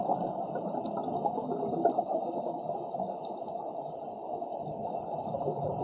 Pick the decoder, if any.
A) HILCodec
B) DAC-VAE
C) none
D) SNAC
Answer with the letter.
C